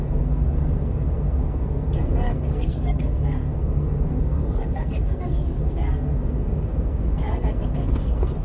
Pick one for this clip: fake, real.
fake